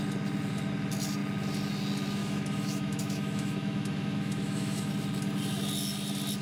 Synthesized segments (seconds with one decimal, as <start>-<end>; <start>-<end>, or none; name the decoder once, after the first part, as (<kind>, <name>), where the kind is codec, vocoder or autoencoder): 2.2-4.9 (autoencoder, DAC-VAE)